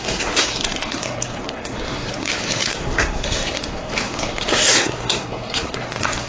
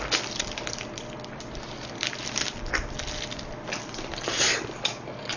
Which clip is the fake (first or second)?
first